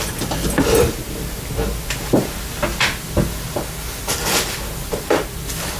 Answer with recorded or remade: recorded